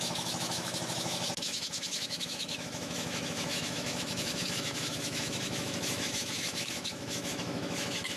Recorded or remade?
remade